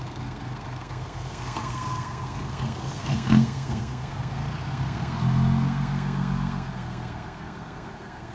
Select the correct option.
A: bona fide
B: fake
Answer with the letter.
B